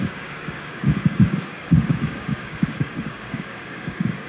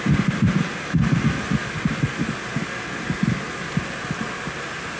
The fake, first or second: first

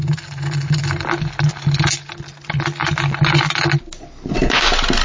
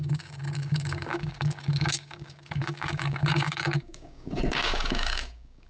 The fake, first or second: second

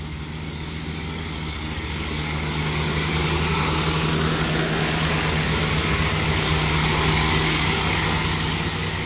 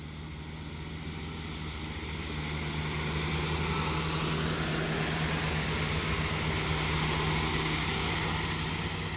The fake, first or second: first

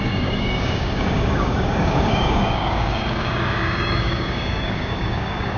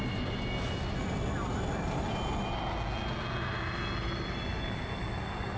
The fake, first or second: first